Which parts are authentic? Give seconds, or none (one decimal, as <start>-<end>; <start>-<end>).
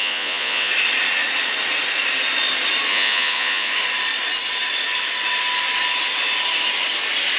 0.7-2.9; 3.7-7.4